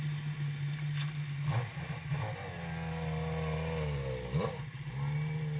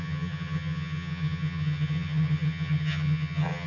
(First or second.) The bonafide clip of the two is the first